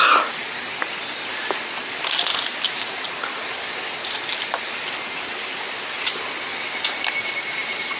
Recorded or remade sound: recorded